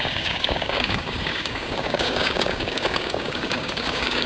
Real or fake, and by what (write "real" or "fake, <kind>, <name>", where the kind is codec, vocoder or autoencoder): fake, codec, DAC